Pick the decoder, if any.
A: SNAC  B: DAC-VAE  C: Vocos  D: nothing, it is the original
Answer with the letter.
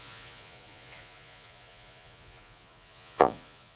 C